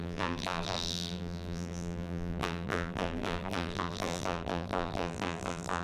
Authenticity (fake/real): fake